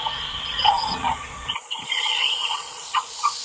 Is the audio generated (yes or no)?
yes